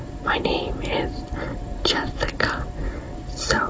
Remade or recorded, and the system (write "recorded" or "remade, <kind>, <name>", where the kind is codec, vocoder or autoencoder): recorded